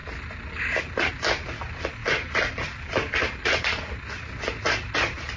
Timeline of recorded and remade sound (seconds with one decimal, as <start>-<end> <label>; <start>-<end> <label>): 0.0-5.4 recorded